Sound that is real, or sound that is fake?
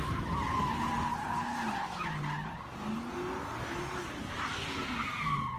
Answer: real